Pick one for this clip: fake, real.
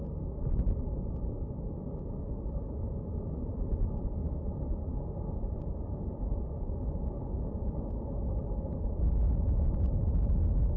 real